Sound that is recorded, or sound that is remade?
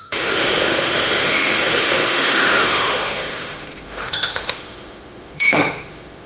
remade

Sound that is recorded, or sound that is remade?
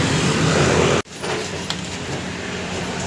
recorded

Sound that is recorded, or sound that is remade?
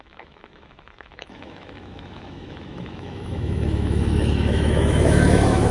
remade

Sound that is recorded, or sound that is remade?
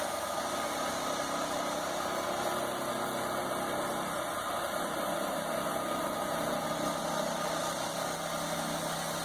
recorded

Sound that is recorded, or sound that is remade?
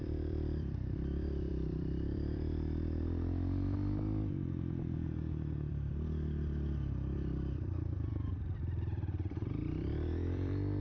remade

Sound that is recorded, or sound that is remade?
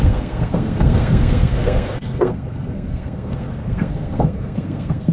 remade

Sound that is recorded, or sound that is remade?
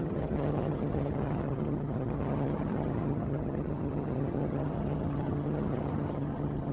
remade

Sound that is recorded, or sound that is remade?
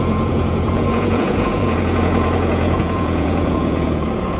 remade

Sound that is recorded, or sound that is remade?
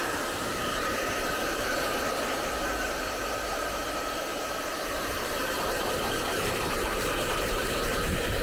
remade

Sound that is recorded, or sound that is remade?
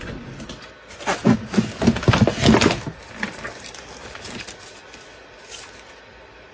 recorded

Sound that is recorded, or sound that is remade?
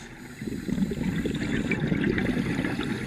recorded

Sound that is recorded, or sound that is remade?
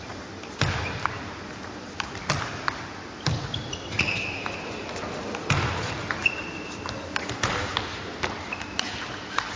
recorded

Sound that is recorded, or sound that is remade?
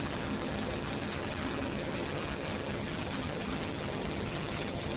remade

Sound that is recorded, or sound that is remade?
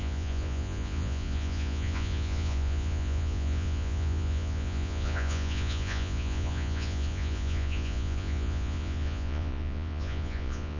remade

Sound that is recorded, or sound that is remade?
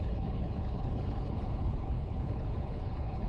remade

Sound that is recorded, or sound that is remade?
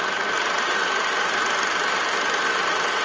recorded